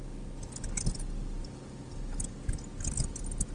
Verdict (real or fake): real